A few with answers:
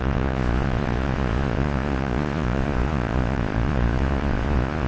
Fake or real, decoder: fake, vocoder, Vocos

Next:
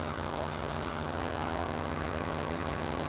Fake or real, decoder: fake, vocoder, HiFi-GAN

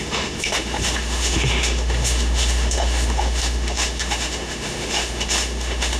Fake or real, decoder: fake, autoencoder, DAC-VAE